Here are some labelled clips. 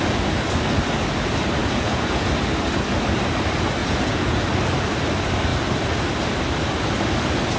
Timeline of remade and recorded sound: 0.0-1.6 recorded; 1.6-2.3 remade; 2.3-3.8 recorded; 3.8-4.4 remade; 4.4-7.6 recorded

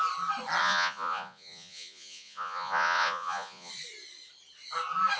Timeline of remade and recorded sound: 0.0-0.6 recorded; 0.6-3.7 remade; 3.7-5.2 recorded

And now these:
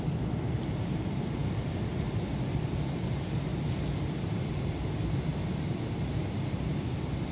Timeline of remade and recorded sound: 0.0-7.3 recorded

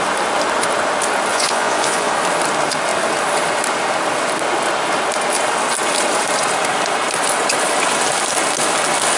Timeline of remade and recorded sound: 0.0-1.3 recorded; 1.3-2.1 remade; 2.1-9.2 recorded

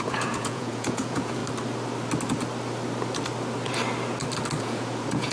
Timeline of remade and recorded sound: 0.0-1.4 remade; 1.4-4.6 recorded; 4.6-5.3 remade

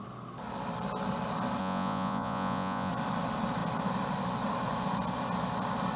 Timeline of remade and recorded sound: 0.0-1.6 recorded; 1.6-2.9 remade; 2.9-6.0 recorded